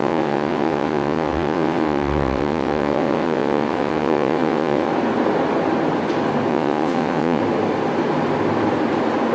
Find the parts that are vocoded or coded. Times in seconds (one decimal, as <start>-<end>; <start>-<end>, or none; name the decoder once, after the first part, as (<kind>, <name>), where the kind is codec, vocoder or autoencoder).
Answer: 0.0-4.9 (vocoder, WaveNeXt); 6.5-7.4